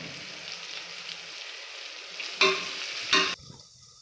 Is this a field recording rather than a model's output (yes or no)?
yes